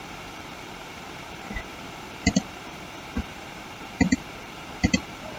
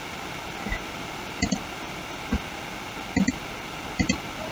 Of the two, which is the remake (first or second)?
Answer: first